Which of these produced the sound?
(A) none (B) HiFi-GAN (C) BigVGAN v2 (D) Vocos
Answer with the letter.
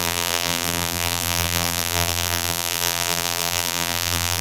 C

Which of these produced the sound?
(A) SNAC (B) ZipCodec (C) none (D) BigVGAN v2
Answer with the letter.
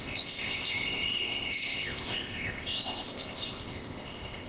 B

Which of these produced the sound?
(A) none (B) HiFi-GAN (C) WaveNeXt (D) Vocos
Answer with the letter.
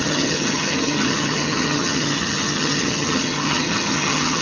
B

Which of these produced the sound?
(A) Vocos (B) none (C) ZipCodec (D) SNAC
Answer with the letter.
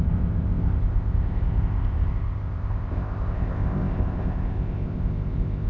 C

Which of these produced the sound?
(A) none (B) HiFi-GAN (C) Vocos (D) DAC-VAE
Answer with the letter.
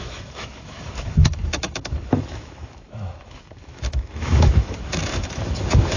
D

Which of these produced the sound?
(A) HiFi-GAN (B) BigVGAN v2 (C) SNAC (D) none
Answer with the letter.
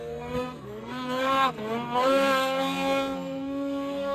C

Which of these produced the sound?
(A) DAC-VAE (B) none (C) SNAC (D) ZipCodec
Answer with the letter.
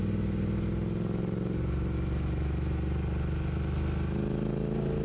B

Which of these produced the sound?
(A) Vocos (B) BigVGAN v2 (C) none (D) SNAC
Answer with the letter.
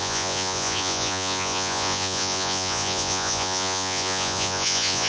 A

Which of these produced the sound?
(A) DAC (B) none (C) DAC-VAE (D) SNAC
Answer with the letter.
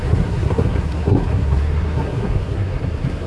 D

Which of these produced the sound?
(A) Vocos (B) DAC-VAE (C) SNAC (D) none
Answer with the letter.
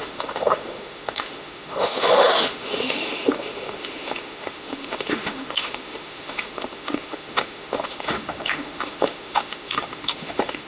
B